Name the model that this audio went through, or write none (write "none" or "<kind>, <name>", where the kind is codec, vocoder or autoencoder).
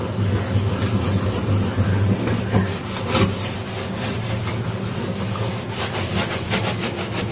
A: none